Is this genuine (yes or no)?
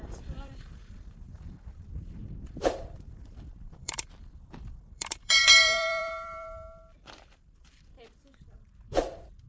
no